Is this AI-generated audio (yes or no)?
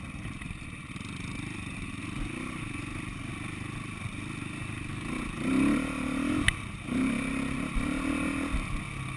no